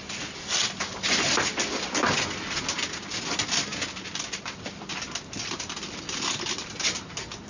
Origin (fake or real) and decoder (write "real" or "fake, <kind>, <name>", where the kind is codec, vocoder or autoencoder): real